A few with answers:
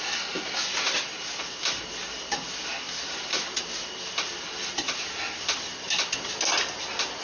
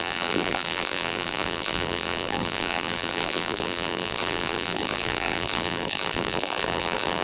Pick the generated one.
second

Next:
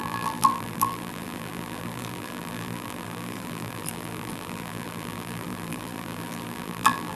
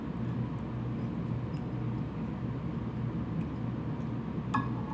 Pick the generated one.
first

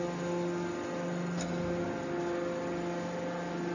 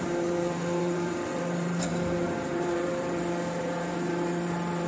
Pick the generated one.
second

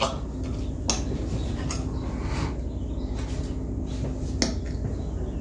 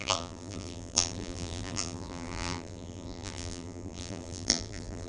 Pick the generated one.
second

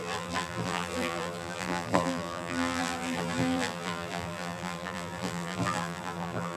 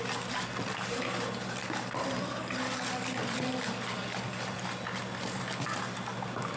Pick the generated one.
first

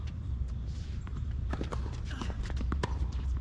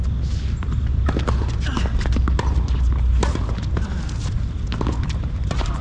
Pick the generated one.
first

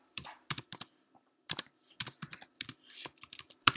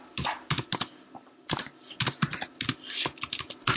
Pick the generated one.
first